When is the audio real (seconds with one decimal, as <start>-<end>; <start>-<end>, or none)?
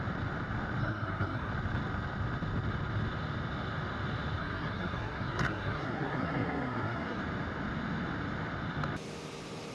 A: 0.0-0.8; 1.5-4.4; 7.2-9.7